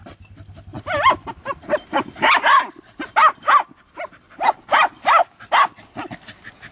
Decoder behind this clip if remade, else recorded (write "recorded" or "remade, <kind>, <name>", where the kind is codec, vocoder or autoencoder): recorded